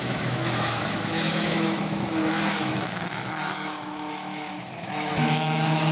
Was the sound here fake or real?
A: fake